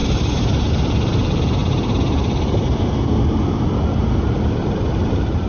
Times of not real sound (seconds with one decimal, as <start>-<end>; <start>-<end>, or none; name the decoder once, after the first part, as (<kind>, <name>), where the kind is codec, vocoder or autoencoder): 0.0-1.6 (vocoder, BigVGAN v2); 4.9-5.5